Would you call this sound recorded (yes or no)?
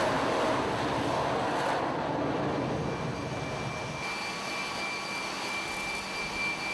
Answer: yes